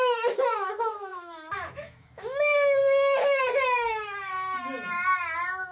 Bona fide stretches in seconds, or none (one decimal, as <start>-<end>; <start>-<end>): 4.3-5.7